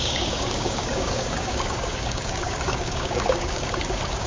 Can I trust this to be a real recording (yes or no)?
no